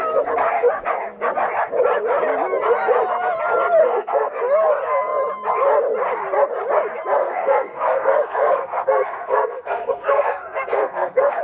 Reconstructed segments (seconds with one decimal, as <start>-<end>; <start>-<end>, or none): 3.8-4.4; 7.2-11.4